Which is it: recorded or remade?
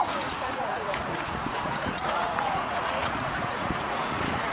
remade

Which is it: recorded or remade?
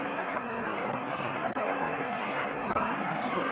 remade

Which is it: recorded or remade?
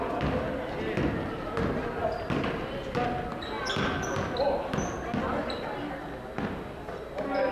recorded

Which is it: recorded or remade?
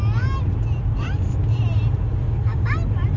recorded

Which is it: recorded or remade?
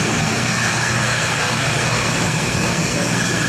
remade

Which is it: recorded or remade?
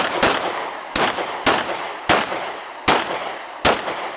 recorded